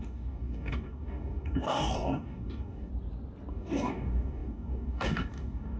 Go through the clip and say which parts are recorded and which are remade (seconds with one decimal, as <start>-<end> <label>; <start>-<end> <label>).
0.0-2.9 remade; 2.9-3.5 recorded; 3.5-5.8 remade